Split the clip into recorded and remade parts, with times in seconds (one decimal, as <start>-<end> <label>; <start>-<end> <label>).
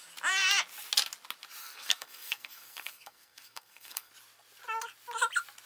0.0-1.6 recorded; 1.6-4.1 remade; 4.1-5.7 recorded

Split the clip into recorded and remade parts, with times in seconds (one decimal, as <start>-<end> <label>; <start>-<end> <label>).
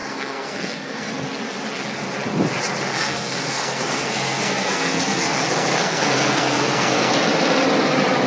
0.0-1.1 remade; 1.1-2.9 recorded; 2.9-7.1 remade; 7.1-8.3 recorded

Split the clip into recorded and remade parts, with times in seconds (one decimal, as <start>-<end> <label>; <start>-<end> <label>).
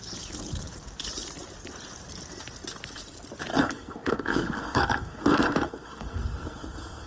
0.0-3.5 recorded; 3.5-7.1 remade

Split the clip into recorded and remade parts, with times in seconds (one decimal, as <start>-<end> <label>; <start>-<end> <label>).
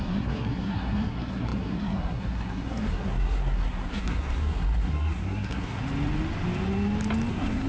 0.0-5.8 remade; 5.8-7.3 recorded; 7.3-7.7 remade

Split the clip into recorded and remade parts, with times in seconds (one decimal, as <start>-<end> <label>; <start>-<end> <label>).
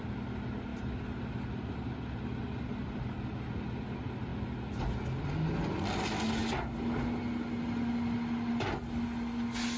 0.0-9.8 recorded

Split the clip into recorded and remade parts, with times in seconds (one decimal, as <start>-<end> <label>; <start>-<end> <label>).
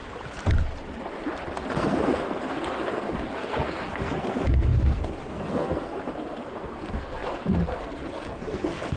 0.0-1.7 recorded; 1.7-9.0 remade